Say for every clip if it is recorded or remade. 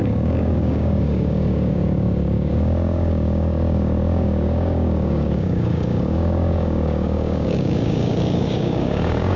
remade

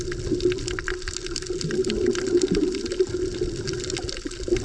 recorded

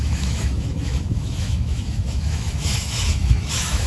remade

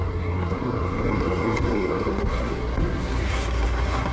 remade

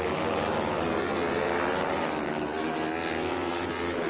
recorded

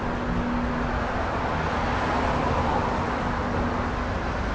recorded